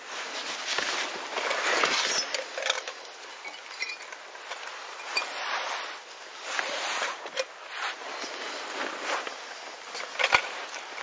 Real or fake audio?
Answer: real